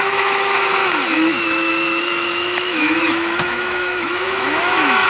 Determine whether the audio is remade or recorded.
remade